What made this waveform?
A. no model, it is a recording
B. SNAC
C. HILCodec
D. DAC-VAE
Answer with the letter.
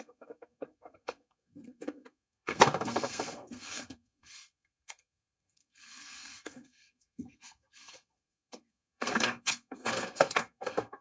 B